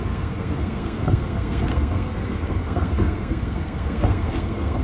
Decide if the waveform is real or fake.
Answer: fake